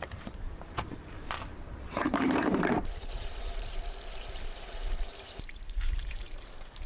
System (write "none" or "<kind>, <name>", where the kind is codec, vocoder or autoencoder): vocoder, BigVGAN v2